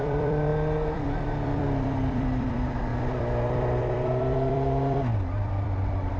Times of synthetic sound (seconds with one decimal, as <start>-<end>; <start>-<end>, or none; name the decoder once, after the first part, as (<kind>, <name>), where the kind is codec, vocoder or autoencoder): 0.0-2.9 (vocoder, BigVGAN v2); 3.5-6.2